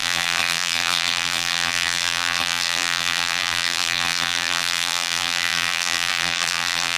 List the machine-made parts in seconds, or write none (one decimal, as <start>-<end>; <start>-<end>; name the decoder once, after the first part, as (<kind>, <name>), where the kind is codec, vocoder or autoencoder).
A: 0.0-7.0 (vocoder, BigVGAN v2)